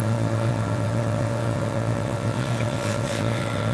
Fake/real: fake